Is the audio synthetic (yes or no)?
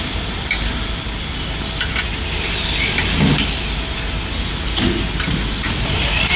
no